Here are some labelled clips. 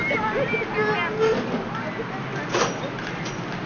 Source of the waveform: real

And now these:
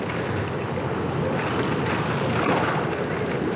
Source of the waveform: real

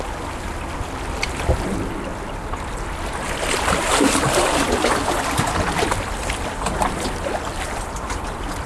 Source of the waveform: real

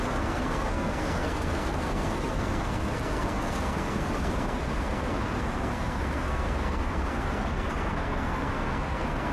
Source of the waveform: fake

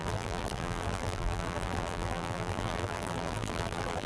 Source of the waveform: fake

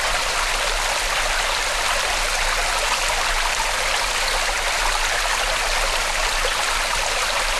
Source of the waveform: real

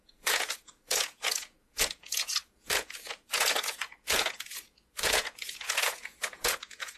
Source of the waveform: fake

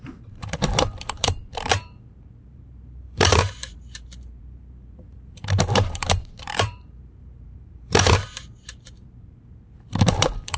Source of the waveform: fake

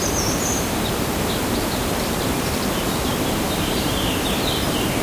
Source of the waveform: fake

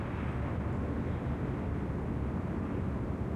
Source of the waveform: real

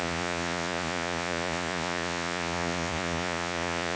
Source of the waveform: fake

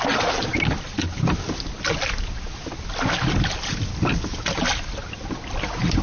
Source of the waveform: real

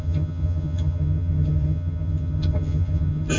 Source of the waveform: fake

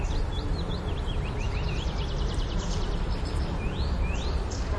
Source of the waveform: fake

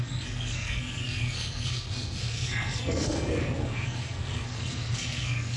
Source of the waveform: fake